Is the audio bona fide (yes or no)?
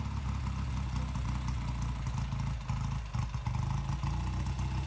yes